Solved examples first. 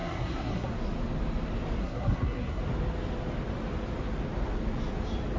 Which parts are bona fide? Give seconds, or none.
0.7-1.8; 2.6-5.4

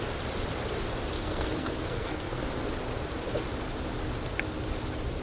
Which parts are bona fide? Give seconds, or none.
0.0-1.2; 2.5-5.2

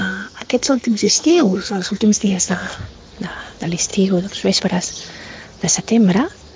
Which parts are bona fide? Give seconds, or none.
2.8-6.6

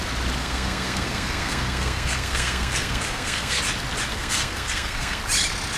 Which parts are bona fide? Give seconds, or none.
0.0-0.4; 3.6-4.1; 5.2-5.8

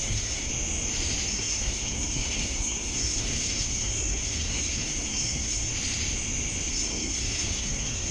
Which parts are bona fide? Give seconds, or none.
0.5-1.3; 5.7-6.7

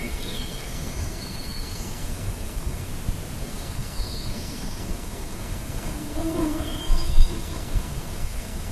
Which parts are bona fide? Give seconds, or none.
2.9-3.4